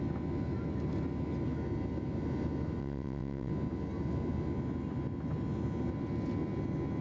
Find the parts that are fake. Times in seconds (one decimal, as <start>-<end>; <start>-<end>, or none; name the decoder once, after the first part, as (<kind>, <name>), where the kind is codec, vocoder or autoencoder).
2.8-3.5 (vocoder, WaveNeXt)